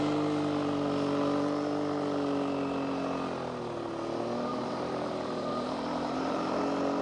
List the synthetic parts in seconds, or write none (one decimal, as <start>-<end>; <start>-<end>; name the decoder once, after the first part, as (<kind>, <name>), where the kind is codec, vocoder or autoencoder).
4.5-6.6 (vocoder, BigVGAN v2)